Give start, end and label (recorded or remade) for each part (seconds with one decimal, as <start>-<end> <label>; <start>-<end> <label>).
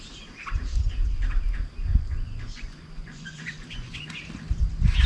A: 0.0-1.9 recorded; 1.9-4.2 remade; 4.2-5.1 recorded